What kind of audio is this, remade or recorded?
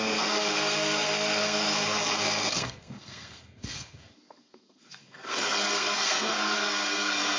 remade